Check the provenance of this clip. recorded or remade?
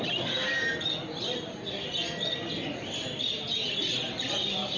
recorded